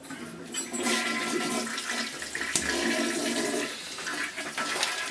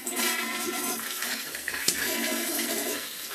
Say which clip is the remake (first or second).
second